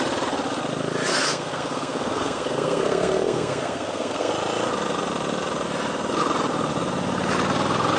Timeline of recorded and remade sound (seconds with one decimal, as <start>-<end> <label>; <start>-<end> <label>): 0.0-1.1 recorded; 1.1-4.3 remade; 4.3-8.0 recorded